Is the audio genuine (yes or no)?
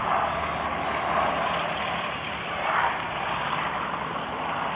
yes